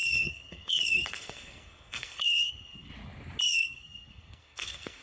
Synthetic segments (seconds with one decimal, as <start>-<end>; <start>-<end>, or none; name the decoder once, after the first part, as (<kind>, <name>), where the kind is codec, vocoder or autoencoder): 0.0-2.9 (codec, SNAC); 3.4-5.0

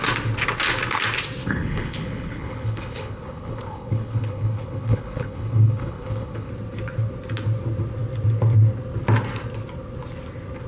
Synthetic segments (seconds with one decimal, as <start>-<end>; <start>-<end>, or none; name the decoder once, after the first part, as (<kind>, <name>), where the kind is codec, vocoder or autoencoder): 1.4-6.5 (codec, HILCodec)

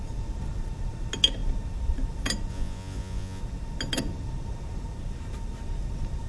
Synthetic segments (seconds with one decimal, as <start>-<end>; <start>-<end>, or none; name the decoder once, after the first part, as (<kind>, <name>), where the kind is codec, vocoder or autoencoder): 2.5-3.4 (vocoder, Vocos)

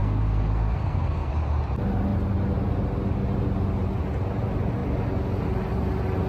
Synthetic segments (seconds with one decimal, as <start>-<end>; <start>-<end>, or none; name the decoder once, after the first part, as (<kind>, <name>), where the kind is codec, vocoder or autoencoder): 0.0-1.3 (codec, SNAC)